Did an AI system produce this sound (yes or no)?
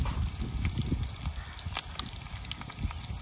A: no